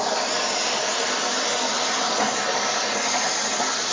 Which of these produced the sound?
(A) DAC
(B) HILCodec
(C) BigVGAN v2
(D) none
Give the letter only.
D